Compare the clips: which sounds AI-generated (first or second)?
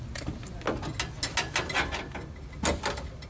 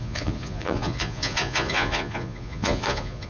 second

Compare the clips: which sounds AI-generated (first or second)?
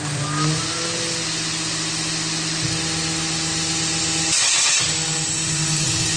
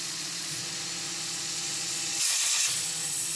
second